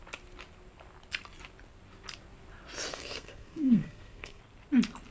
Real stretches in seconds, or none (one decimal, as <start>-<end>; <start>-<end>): 0.0-2.9; 4.4-5.1